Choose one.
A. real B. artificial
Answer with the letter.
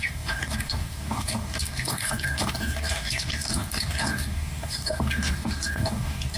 B